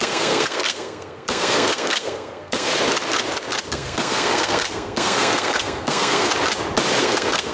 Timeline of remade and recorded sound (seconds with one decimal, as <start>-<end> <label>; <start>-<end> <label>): 0.0-2.7 remade; 2.7-3.7 recorded; 3.7-6.3 remade; 6.3-7.0 recorded; 7.0-7.5 remade